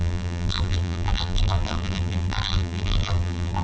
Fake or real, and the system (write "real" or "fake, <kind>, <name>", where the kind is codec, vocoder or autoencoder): fake, vocoder, BigVGAN v2